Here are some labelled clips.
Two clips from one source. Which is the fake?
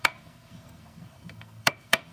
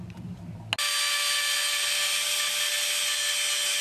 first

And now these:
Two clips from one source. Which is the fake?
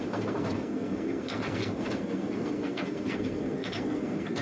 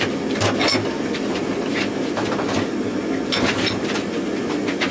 first